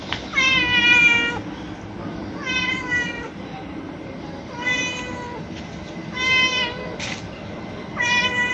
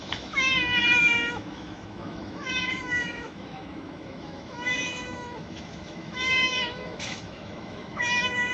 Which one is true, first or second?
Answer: first